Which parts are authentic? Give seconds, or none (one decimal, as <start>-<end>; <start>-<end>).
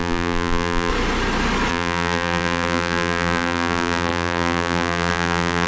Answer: 0.9-1.7